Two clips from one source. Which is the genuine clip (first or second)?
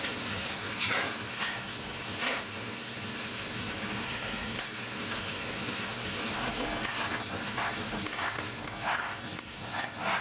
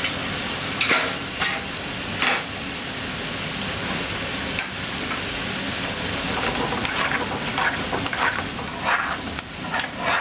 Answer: second